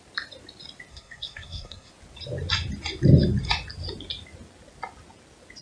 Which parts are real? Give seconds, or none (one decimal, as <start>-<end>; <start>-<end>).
0.0-0.9; 1.9-5.6